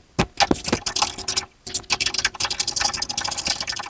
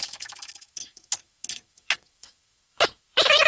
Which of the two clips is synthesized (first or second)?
second